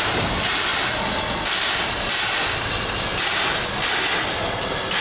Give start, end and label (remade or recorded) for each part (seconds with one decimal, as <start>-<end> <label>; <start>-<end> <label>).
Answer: 0.0-5.0 recorded

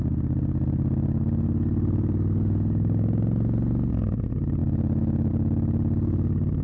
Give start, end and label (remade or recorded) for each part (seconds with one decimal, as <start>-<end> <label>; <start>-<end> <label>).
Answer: 0.0-6.6 recorded

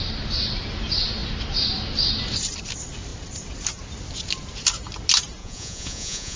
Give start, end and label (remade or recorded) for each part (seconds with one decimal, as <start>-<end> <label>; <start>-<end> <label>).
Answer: 0.0-5.4 recorded; 5.4-6.4 remade

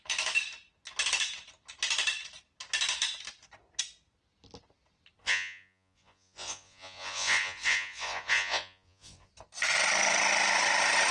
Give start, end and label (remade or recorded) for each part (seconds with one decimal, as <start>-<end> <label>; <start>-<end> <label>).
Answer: 0.0-5.2 recorded; 5.2-9.3 remade; 9.3-11.1 recorded